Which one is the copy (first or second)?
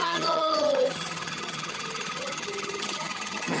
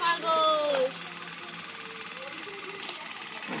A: first